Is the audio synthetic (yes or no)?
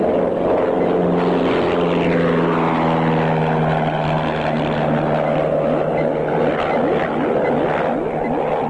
no